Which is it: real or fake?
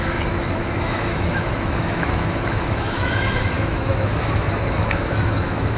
fake